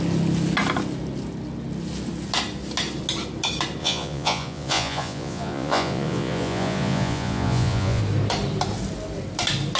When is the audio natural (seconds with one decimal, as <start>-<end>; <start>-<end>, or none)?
0.0-3.8; 8.0-9.8